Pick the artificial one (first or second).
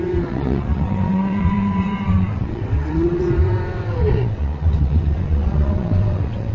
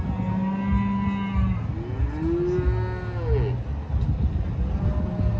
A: first